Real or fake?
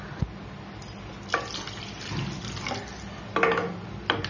real